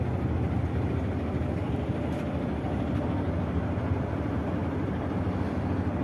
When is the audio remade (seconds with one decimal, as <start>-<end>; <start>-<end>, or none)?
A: 4.6-5.2